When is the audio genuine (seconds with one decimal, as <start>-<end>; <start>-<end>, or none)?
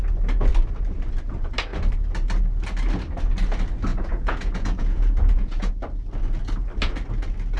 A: 0.0-3.9; 5.7-7.6